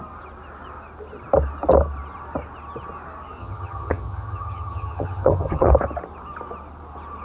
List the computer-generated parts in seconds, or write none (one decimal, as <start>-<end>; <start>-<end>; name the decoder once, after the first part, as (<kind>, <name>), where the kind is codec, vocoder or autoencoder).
3.4-5.7 (vocoder, HiFi-GAN)